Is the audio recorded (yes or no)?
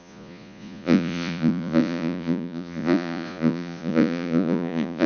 no